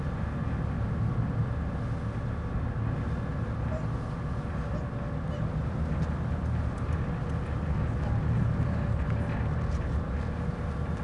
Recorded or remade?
recorded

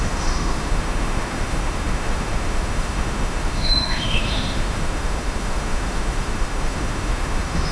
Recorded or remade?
remade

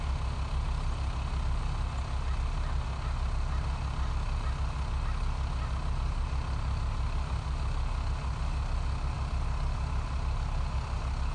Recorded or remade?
recorded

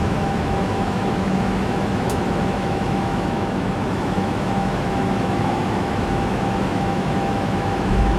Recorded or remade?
remade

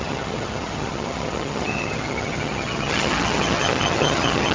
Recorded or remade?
remade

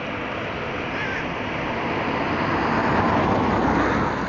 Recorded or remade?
recorded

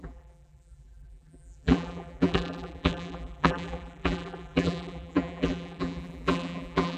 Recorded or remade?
remade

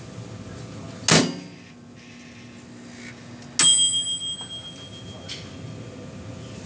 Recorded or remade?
recorded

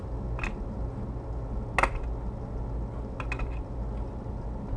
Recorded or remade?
recorded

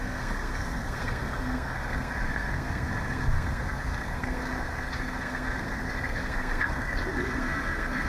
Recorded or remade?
remade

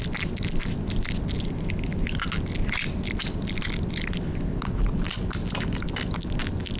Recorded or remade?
recorded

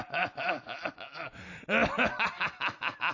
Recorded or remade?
recorded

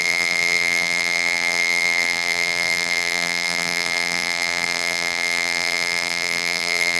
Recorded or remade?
remade